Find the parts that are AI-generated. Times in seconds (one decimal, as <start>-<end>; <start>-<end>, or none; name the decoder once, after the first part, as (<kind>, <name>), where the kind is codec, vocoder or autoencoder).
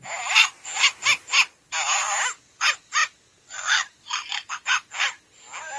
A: none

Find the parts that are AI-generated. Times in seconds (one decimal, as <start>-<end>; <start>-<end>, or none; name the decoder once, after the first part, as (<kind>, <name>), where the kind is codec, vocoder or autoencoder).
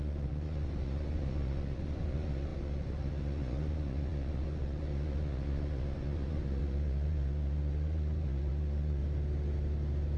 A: 0.0-9.0 (vocoder, Vocos)